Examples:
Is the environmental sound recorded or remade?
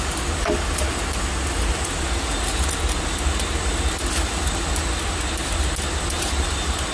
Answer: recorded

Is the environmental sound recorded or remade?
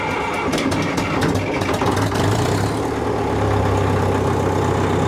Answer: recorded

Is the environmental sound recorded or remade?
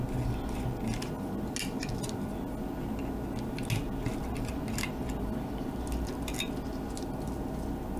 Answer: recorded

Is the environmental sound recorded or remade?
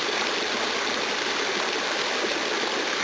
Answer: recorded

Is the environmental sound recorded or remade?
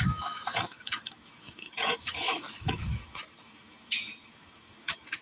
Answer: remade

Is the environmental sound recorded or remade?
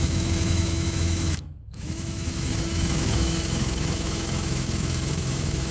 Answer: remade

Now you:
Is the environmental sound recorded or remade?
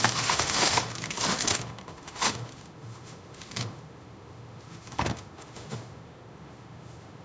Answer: remade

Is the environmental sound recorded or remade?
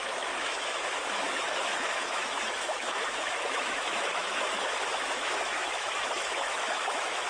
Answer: remade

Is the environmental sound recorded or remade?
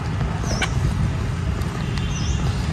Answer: recorded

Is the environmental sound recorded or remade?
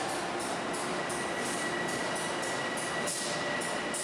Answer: recorded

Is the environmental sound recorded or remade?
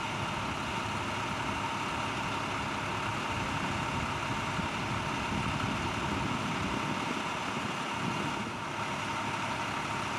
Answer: recorded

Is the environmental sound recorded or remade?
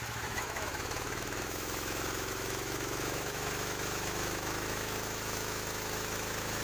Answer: remade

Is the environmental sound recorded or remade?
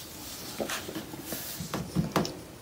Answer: recorded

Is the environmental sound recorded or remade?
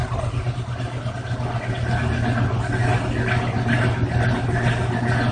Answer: recorded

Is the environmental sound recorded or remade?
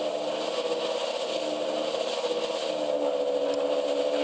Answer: recorded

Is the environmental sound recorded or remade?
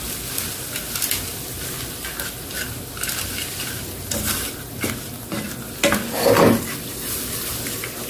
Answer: recorded